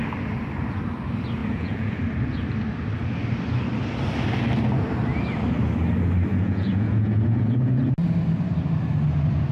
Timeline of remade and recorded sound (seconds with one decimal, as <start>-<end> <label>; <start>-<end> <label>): 0.0-1.4 recorded; 1.4-2.0 remade; 2.0-6.3 recorded; 6.3-7.8 remade; 7.8-9.5 recorded